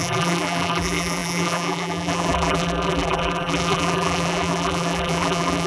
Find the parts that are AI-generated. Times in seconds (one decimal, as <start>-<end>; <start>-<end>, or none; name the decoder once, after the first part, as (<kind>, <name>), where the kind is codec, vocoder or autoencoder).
0.0-5.7 (vocoder, BigVGAN v2)